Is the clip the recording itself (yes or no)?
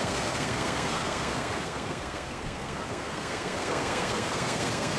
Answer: no